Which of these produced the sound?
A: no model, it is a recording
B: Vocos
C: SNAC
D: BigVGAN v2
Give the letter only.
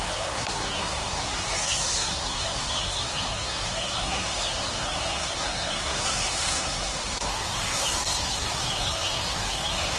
C